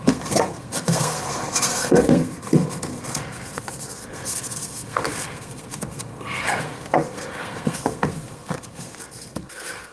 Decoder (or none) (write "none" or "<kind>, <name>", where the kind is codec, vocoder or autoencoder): codec, SNAC